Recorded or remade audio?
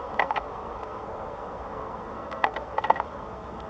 remade